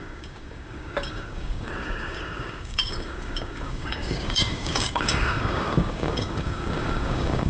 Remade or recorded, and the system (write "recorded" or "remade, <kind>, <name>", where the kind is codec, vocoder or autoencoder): remade, codec, DAC